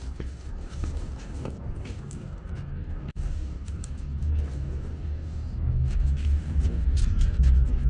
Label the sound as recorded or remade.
remade